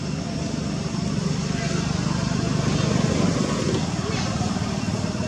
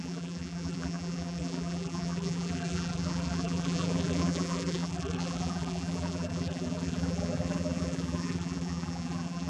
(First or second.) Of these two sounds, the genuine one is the first